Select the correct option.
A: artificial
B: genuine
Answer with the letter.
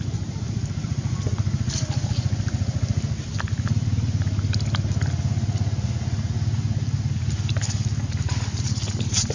B